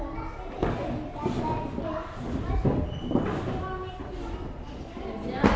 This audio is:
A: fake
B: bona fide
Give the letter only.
B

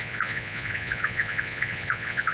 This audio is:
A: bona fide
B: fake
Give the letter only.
B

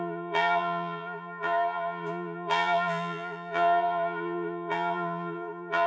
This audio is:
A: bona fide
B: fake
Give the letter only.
B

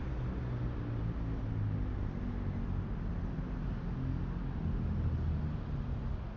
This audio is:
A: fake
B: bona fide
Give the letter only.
B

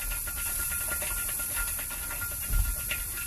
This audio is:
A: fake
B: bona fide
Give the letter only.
B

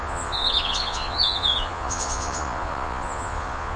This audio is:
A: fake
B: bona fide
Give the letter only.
A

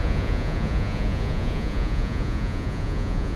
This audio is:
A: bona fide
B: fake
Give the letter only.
B